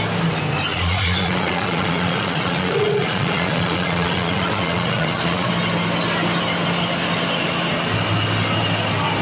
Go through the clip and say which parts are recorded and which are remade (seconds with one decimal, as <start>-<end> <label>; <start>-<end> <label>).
0.0-0.7 recorded; 0.7-5.5 remade; 5.5-9.2 recorded